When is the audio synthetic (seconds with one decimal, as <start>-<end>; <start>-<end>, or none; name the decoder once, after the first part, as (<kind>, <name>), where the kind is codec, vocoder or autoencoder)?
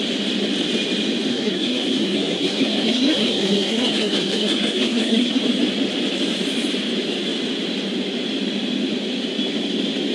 1.3-5.4 (codec, SNAC)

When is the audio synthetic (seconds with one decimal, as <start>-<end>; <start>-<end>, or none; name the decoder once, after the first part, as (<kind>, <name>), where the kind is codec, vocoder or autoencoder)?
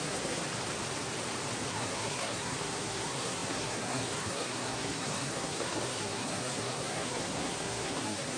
0.0-0.4 (codec, SNAC); 1.7-8.4